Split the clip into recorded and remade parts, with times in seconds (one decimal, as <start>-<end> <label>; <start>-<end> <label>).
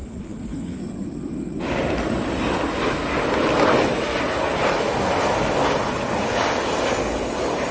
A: 0.0-0.8 remade; 0.8-7.7 recorded